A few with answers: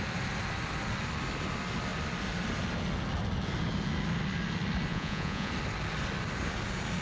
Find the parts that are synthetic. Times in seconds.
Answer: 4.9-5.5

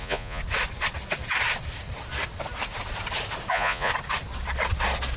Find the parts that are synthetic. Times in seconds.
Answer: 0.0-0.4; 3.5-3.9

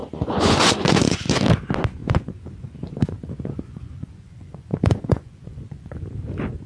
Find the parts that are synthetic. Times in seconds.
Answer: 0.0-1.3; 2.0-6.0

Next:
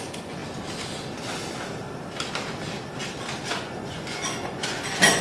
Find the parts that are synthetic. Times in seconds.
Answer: 0.0-0.4; 3.5-5.2